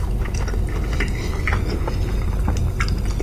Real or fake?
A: real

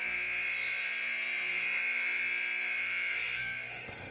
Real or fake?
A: fake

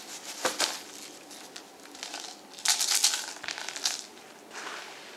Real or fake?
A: real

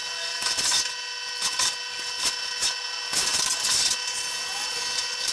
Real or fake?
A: real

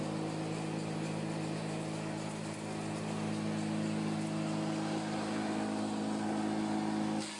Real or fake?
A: real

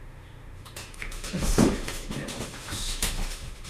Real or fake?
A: fake